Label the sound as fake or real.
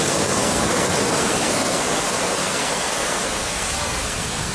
fake